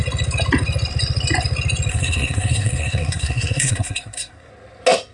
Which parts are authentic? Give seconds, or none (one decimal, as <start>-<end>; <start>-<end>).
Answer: 0.0-1.9; 4.5-5.1